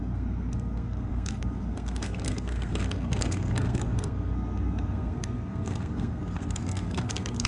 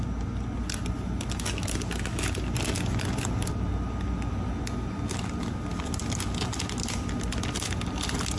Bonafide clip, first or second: second